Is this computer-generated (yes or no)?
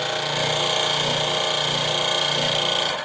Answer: no